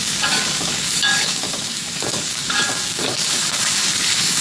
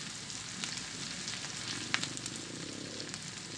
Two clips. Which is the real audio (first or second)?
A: second